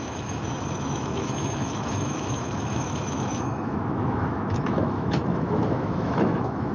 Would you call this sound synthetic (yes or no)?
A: yes